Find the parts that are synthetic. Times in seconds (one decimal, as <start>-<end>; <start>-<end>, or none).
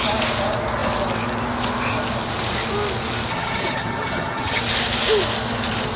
3.3-4.6